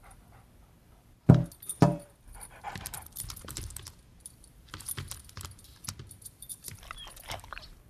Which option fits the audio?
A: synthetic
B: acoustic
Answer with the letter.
A